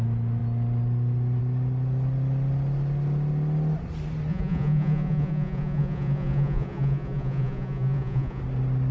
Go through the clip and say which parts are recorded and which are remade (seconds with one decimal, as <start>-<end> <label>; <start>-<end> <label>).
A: 0.0-4.3 recorded; 4.3-8.4 remade; 8.4-8.9 recorded